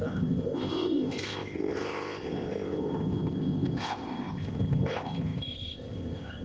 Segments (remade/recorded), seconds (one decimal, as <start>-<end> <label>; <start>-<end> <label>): 0.0-6.4 remade